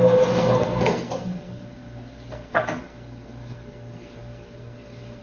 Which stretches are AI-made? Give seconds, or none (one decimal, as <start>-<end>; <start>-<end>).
0.0-5.2